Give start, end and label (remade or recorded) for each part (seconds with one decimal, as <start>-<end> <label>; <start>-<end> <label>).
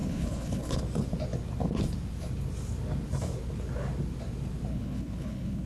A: 0.0-0.8 remade; 0.8-4.7 recorded; 4.7-5.7 remade